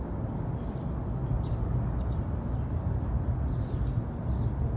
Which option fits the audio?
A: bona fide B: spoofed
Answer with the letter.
A